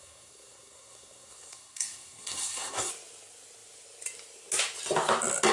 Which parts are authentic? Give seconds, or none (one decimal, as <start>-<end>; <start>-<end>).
2.9-5.5